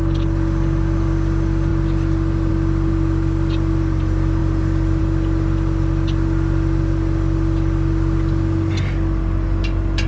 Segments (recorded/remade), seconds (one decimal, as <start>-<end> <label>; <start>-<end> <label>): 0.0-10.1 recorded